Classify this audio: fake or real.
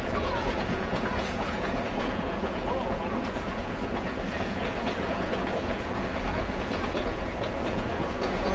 fake